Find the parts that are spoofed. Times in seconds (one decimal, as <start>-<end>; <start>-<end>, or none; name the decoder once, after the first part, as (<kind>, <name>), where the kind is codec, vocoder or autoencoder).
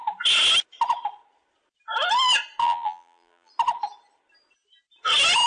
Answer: 2.6-3.5 (vocoder, BigVGAN v2)